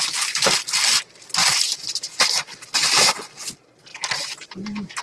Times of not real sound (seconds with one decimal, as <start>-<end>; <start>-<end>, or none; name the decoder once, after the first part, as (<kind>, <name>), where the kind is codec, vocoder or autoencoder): 1.4-2.6 (vocoder, BigVGAN v2); 3.9-5.0